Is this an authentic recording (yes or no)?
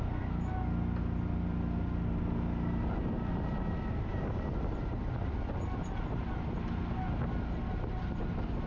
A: yes